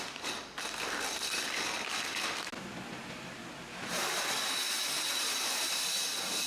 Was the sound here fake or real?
real